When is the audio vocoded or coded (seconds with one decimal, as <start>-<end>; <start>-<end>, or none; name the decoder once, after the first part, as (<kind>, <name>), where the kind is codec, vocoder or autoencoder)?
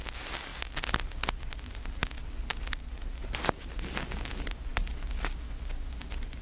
none